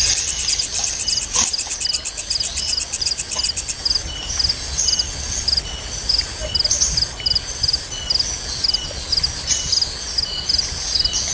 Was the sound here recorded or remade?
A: recorded